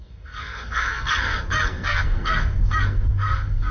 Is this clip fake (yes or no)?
yes